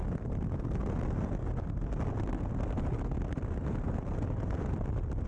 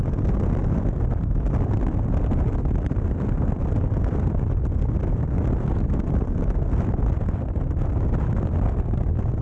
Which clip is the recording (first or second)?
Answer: first